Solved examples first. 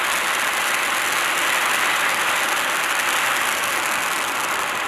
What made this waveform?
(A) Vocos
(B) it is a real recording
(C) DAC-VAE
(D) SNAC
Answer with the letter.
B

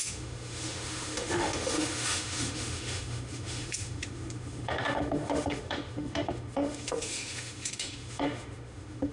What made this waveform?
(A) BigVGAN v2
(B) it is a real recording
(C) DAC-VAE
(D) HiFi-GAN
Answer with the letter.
C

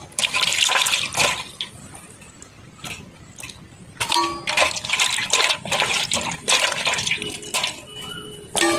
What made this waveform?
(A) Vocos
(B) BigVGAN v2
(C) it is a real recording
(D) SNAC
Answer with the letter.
C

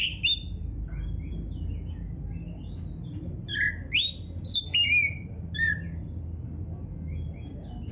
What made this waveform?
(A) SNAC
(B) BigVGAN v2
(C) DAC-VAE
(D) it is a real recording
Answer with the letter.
D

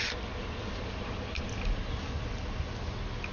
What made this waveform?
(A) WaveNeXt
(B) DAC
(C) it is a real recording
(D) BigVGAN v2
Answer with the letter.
C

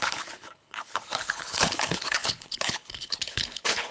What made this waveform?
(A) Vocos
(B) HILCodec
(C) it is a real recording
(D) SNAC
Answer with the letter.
B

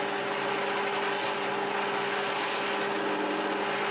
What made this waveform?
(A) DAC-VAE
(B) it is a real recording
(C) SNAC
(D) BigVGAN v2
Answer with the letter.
B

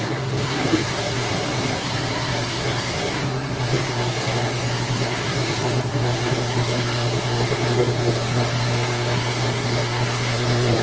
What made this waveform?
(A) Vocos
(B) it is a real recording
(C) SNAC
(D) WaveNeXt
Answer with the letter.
C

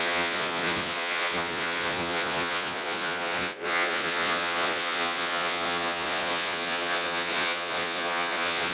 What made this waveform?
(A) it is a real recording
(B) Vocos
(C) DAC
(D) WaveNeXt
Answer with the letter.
B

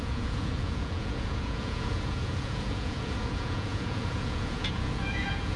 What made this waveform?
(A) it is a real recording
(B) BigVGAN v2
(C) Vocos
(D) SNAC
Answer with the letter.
C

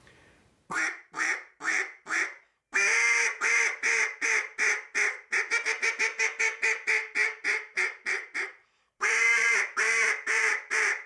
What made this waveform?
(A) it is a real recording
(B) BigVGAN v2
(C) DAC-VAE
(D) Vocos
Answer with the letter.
B